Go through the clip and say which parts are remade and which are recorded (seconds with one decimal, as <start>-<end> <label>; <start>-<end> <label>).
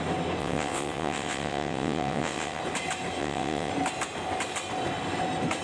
0.0-0.4 recorded; 0.4-2.6 remade; 2.6-3.2 recorded; 3.2-3.7 remade; 3.7-5.6 recorded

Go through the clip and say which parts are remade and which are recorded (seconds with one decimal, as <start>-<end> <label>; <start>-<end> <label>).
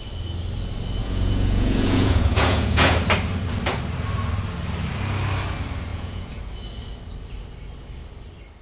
0.0-1.0 recorded; 1.0-3.0 remade; 3.0-5.9 recorded; 5.9-6.4 remade; 6.4-8.6 recorded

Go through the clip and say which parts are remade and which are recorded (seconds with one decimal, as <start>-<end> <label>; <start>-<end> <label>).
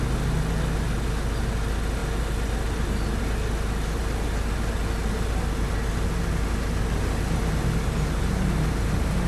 0.0-9.3 recorded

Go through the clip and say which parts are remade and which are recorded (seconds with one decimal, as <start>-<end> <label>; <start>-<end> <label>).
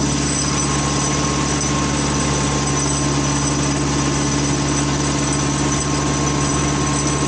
0.0-7.3 recorded